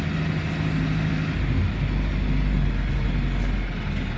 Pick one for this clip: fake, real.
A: real